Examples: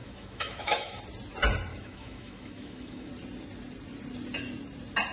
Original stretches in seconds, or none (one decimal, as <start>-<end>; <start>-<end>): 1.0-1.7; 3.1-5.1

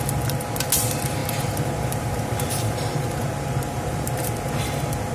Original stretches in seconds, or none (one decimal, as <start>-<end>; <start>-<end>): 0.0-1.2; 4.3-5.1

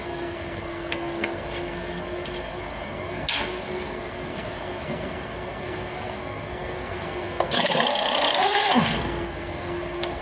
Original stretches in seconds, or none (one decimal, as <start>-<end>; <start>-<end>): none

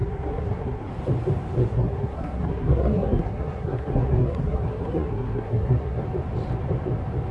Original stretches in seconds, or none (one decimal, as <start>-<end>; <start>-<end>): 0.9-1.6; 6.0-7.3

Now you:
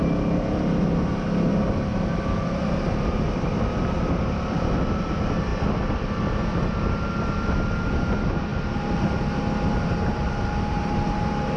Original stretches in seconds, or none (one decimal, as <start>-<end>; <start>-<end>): 0.0-11.6